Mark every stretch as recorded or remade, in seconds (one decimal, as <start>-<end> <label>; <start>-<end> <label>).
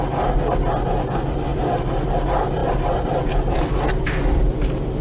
0.0-5.0 recorded